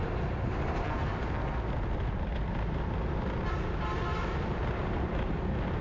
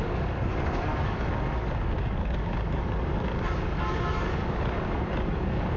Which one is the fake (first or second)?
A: second